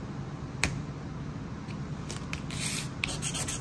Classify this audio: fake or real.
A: real